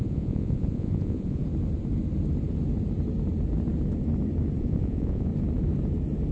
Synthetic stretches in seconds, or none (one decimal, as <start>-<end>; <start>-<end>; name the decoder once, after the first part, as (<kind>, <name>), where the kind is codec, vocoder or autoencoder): 0.0-1.4 (vocoder, Vocos); 4.6-5.3